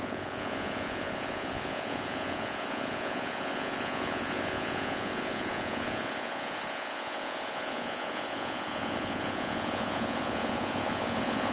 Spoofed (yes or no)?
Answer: yes